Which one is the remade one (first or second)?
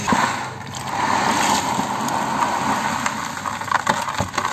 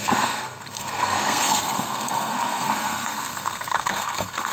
second